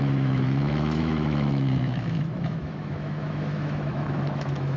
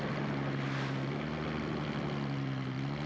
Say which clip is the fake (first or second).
first